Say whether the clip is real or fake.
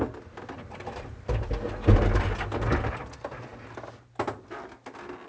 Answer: real